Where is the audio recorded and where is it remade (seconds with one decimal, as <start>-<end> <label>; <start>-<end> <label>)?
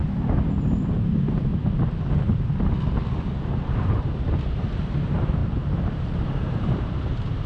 0.0-0.6 recorded; 0.6-1.5 remade; 1.5-3.4 recorded; 3.4-7.5 remade